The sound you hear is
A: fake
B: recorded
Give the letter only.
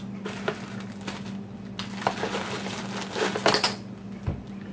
B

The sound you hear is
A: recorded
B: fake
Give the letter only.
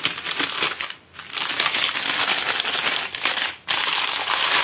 A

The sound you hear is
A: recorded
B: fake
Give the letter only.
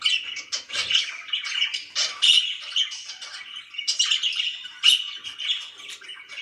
A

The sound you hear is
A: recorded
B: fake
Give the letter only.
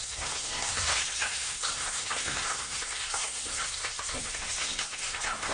B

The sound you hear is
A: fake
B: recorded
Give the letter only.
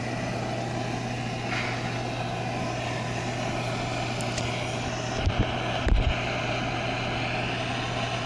B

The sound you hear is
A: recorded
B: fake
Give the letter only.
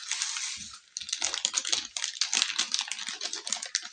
A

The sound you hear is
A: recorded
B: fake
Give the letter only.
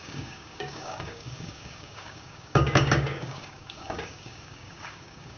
B